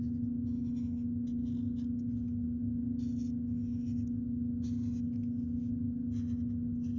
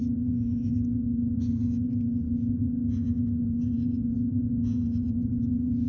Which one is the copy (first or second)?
second